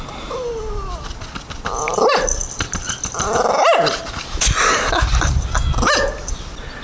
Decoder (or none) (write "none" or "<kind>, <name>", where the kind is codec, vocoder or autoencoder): none